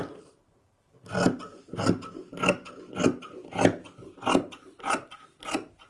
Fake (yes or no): no